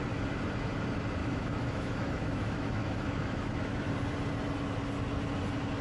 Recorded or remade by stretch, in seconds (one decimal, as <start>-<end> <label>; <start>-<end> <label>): 0.0-1.2 recorded; 1.2-3.9 remade; 3.9-5.8 recorded